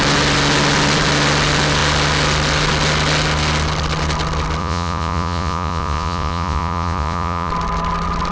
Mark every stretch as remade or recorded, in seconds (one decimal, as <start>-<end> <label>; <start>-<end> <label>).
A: 0.0-4.6 recorded; 4.6-7.5 remade; 7.5-8.3 recorded